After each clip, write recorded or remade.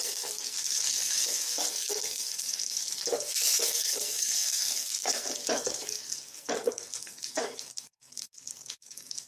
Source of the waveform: remade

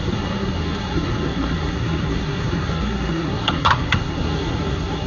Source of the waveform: remade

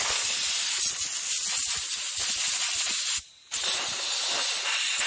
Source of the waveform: recorded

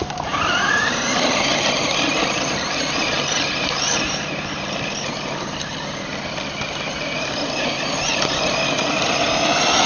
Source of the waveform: recorded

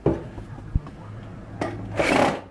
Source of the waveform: recorded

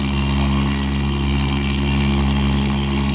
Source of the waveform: remade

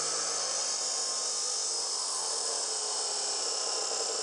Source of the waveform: recorded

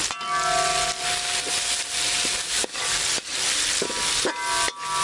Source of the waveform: recorded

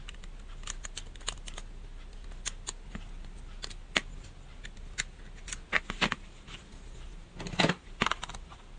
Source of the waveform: recorded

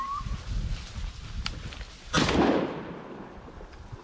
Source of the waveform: recorded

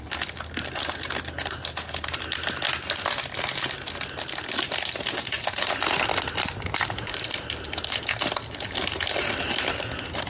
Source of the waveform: recorded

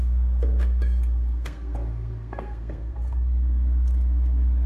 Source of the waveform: remade